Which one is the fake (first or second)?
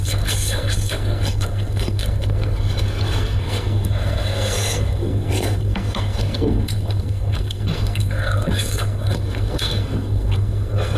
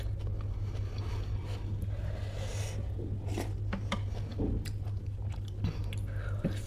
first